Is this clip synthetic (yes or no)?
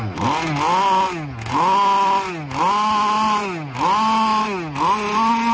no